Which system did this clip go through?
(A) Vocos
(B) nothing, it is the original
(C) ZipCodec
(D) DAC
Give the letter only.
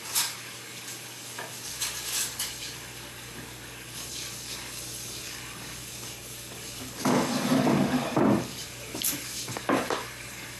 D